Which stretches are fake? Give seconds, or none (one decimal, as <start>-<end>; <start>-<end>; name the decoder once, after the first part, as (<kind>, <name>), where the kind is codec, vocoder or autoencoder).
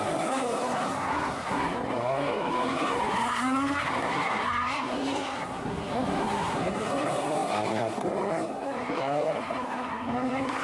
0.0-10.6 (codec, SNAC)